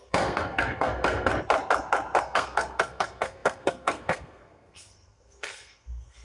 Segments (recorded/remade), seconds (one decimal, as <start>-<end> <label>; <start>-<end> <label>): 0.0-1.3 remade; 1.3-2.2 recorded; 2.2-6.2 remade